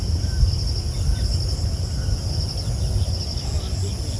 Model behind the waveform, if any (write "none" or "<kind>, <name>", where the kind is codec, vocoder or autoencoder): none